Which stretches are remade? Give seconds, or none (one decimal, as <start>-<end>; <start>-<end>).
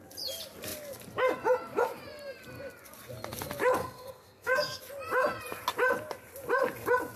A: 3.8-4.8